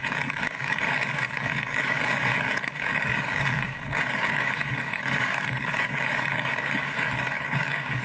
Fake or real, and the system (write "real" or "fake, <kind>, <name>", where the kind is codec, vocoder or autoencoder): fake, codec, DAC